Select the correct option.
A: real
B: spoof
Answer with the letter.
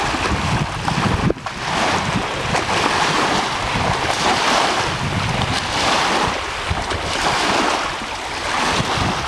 A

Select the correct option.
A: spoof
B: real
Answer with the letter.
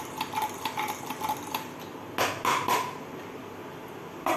B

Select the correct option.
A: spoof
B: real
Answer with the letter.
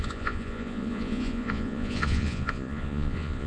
A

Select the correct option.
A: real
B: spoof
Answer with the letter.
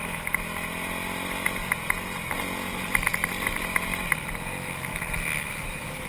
A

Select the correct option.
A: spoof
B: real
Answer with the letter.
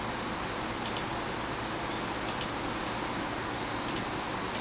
B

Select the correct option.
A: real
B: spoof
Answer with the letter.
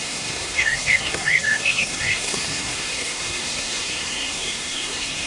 B